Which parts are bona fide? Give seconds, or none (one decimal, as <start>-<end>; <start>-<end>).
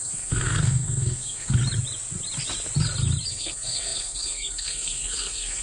1.6-3.3